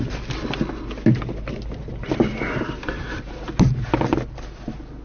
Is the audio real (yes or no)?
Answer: yes